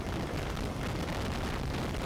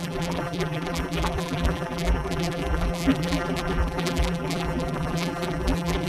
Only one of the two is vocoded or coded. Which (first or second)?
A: second